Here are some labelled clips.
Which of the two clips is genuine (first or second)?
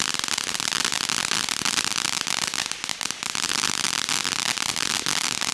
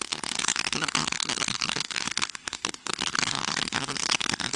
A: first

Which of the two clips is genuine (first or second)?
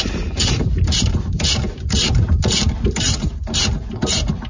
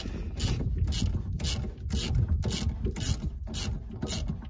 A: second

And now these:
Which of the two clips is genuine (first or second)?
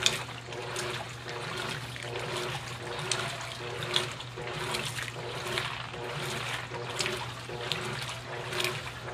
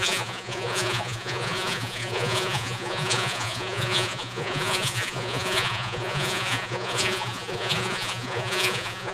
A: first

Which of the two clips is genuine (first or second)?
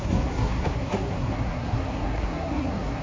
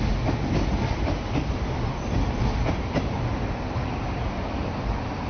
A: second